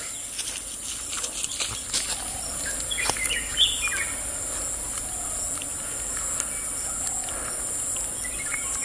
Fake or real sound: real